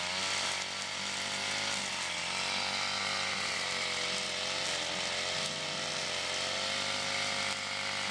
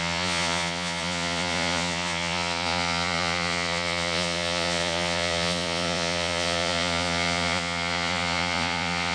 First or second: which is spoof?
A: second